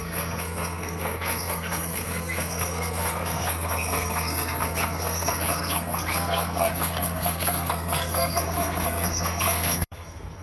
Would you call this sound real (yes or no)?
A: no